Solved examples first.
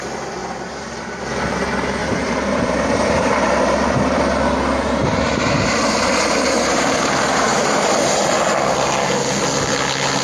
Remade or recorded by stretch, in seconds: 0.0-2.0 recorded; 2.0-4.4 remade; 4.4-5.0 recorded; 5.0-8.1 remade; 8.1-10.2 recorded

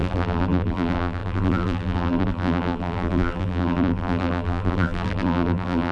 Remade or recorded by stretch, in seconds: 0.0-5.9 remade

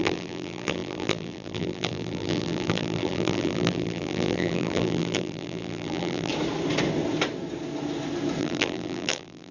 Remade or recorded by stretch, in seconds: 0.0-6.3 remade; 6.3-8.4 recorded; 8.4-9.5 remade

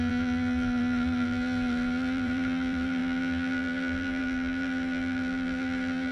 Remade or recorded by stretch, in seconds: 0.0-6.1 remade

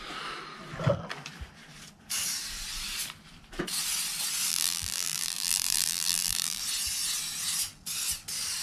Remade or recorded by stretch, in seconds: 0.0-4.5 recorded; 4.5-6.6 remade; 6.6-8.6 recorded